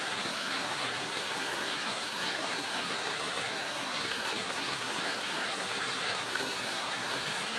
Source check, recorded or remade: remade